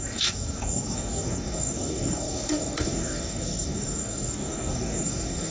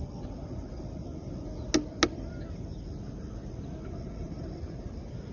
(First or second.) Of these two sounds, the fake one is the first